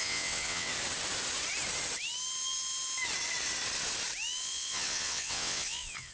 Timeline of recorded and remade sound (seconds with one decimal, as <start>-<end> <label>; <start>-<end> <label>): 0.0-0.7 remade; 0.7-4.4 recorded; 4.4-6.1 remade